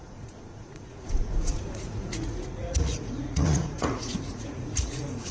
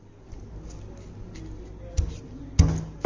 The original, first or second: second